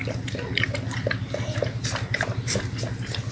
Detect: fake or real real